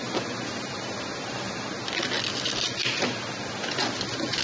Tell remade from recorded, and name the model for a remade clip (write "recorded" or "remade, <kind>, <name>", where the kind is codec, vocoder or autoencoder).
recorded